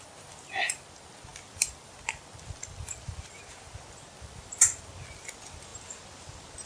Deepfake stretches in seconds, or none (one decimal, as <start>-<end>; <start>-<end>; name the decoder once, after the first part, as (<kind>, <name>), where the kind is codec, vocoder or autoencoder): none